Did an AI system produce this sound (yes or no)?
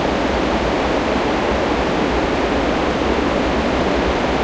no